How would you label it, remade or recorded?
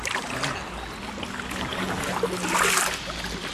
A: recorded